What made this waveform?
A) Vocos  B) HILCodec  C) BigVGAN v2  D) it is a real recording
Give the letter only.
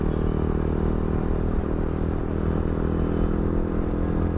D